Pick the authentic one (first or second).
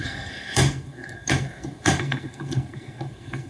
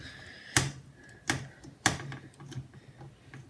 second